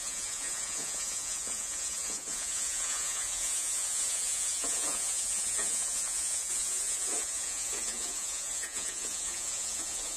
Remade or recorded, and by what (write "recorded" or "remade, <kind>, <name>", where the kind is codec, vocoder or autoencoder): remade, vocoder, Vocos